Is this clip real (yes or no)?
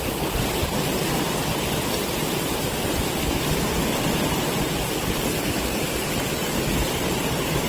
yes